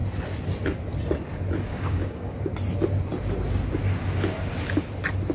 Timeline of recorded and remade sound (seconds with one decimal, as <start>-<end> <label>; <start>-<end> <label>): 0.0-1.7 recorded; 1.7-2.5 remade; 2.5-5.3 recorded